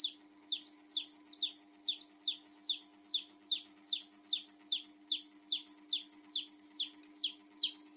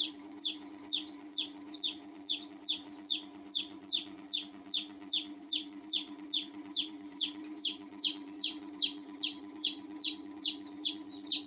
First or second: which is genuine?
first